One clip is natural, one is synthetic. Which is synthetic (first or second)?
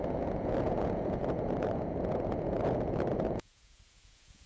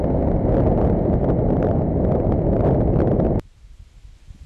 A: first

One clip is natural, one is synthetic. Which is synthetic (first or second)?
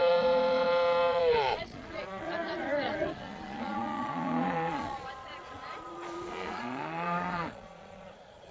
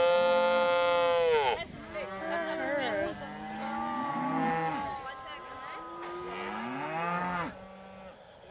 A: first